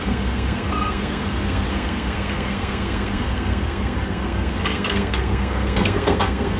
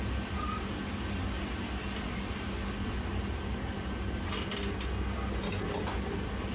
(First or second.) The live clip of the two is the second